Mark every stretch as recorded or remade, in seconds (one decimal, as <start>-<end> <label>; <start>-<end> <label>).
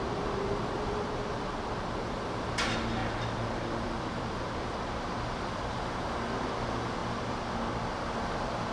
0.0-3.0 recorded; 3.0-4.7 remade; 4.7-8.7 recorded